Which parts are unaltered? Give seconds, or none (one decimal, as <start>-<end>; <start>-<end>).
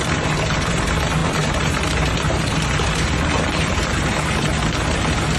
4.5-5.4